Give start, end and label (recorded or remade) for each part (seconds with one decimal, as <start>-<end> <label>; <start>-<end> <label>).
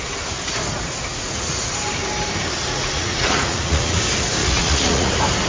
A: 0.0-1.1 recorded; 1.1-1.7 remade; 1.7-2.7 recorded; 2.7-4.0 remade; 4.0-4.4 recorded; 4.4-5.1 remade; 5.1-5.5 recorded